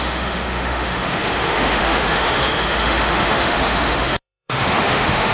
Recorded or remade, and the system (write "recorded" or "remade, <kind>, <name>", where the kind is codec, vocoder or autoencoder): remade, autoencoder, DAC-VAE